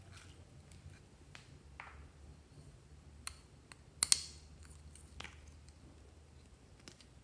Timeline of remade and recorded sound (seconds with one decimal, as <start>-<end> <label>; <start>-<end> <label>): 0.0-7.2 recorded